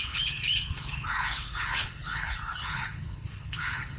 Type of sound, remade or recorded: remade